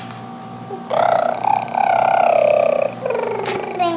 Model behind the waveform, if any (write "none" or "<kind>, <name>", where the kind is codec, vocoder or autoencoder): none